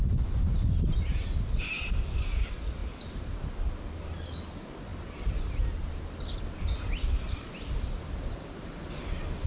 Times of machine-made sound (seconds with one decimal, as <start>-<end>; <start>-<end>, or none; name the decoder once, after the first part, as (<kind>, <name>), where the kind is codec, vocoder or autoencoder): 2.8-3.3 (vocoder, BigVGAN v2)